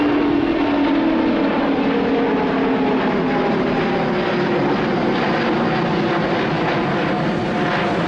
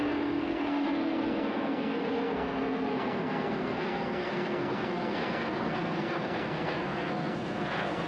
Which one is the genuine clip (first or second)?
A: first